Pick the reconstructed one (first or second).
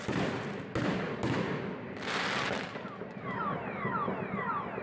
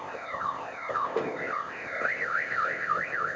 second